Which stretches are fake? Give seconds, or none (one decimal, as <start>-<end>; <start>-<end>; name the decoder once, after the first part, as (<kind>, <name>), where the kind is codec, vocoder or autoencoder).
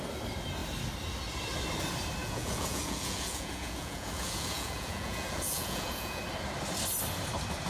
2.2-6.2 (vocoder, Vocos)